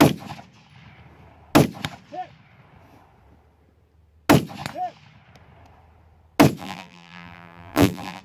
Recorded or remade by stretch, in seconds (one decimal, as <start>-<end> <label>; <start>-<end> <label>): 0.0-6.6 recorded; 6.6-8.2 remade